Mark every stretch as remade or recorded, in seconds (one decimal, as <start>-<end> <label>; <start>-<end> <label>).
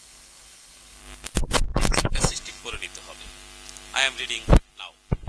0.0-1.0 remade; 1.0-1.7 recorded; 1.7-2.6 remade; 2.6-5.3 recorded